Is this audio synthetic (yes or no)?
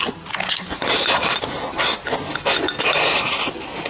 no